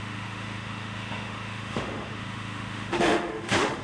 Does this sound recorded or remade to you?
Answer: remade